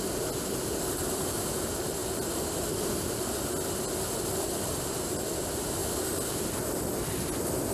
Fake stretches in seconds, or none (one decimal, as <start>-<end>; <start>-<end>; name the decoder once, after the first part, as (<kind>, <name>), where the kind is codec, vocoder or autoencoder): 5.8-6.5 (vocoder, BigVGAN v2)